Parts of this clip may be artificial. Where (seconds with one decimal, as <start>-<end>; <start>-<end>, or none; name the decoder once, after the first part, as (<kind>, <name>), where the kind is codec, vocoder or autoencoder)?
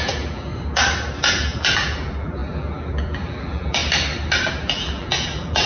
0.0-0.5 (vocoder, BigVGAN v2); 1.3-3.8; 4.5-5.7